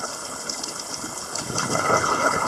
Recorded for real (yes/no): no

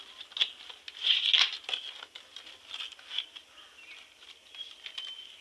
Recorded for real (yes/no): yes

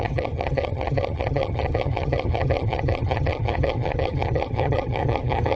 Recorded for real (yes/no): no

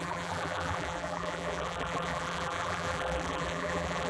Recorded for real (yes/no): no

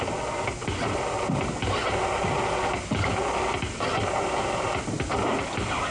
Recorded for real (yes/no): yes